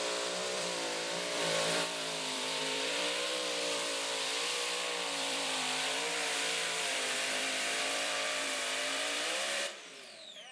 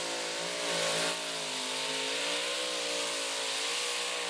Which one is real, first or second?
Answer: second